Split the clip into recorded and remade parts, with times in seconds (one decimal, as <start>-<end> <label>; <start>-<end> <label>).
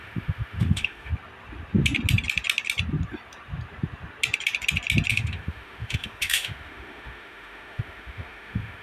0.0-1.1 remade; 1.1-5.1 recorded; 5.1-8.8 remade